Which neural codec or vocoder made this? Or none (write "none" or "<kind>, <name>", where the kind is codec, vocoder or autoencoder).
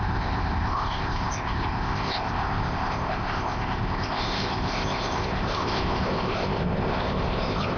codec, ZipCodec